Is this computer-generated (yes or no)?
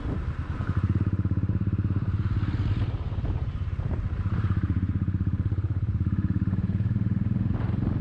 yes